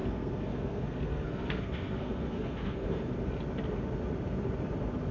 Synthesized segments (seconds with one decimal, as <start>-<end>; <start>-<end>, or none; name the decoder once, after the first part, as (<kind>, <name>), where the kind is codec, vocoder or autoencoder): 0.0-3.1 (codec, SNAC)